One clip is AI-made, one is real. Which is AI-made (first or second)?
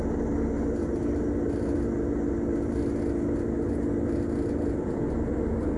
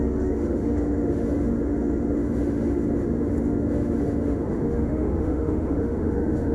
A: second